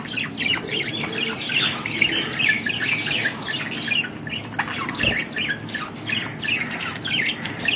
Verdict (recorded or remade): recorded